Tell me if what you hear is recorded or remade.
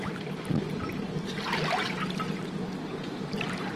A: recorded